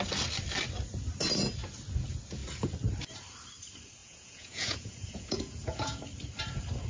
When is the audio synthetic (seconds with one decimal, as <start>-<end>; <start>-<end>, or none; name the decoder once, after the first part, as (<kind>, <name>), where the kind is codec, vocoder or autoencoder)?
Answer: 4.0-6.0 (vocoder, Vocos)